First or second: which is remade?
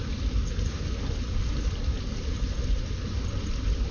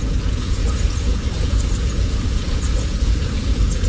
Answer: second